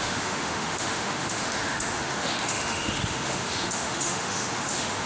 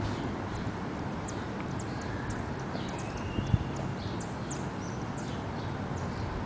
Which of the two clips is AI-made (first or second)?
first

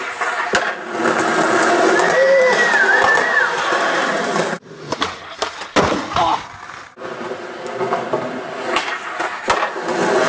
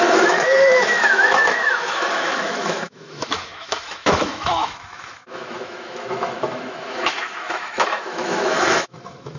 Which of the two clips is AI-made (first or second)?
second